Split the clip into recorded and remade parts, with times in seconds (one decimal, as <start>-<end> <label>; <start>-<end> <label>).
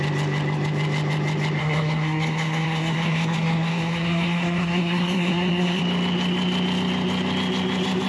0.0-1.6 recorded; 1.6-5.8 remade; 5.8-8.1 recorded